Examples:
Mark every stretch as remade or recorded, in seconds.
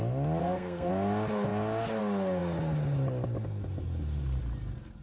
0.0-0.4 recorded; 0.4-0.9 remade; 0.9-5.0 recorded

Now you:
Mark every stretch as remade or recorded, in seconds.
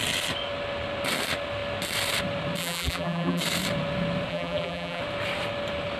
0.0-2.6 recorded; 2.6-3.4 remade; 3.4-4.3 recorded; 4.3-5.0 remade; 5.0-6.0 recorded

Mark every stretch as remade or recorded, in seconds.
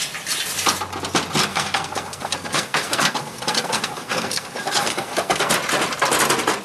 0.0-1.5 recorded; 1.5-5.5 remade; 5.5-6.6 recorded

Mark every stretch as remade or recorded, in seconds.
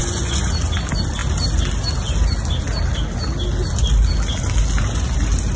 0.0-0.5 remade; 0.5-5.6 recorded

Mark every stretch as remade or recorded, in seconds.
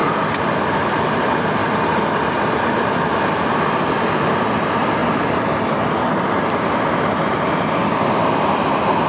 0.0-0.8 remade; 0.8-1.6 recorded; 1.6-3.2 remade; 3.2-9.1 recorded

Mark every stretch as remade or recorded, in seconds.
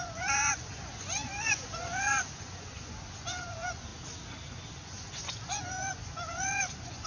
0.0-3.9 remade; 3.9-4.7 recorded; 4.7-7.1 remade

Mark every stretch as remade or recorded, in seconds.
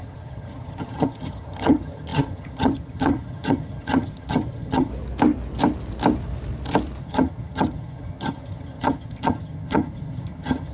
0.0-4.9 remade; 4.9-7.0 recorded; 7.0-10.7 remade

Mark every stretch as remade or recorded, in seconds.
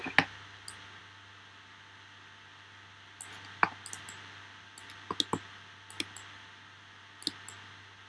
0.0-8.1 recorded